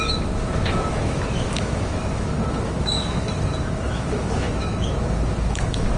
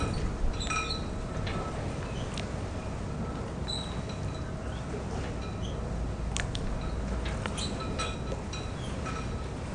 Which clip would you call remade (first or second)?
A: first